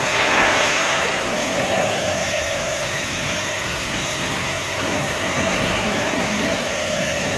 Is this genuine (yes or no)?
no